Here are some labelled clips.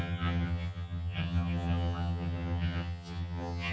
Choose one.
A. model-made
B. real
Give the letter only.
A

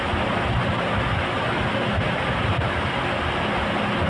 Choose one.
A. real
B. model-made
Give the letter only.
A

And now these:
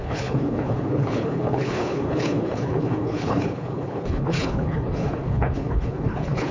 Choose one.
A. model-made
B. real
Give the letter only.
A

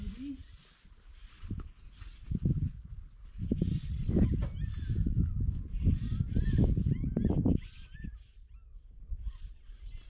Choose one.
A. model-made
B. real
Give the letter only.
B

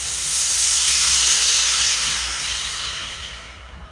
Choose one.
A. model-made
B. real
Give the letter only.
A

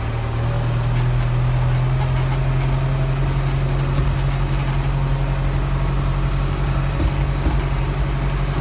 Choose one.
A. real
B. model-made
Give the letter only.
A